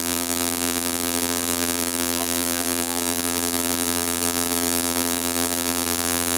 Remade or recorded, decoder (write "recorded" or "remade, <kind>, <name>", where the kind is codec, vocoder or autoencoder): remade, vocoder, BigVGAN v2